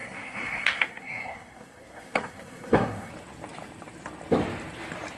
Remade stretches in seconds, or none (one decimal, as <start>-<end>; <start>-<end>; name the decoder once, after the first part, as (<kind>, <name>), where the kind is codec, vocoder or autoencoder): 0.0-3.1 (codec, SNAC)